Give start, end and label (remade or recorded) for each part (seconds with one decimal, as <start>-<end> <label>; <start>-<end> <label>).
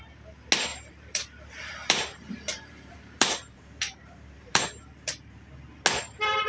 0.0-0.7 recorded; 0.7-4.6 remade; 4.6-6.5 recorded